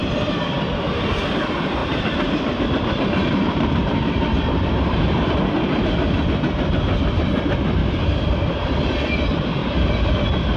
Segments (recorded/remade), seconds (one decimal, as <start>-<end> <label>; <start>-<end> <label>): 0.0-1.1 remade; 1.1-1.8 recorded; 1.8-5.4 remade; 5.4-7.8 recorded; 7.8-8.6 remade; 8.6-9.6 recorded; 9.6-10.6 remade